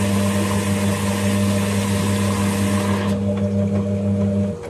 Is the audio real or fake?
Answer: real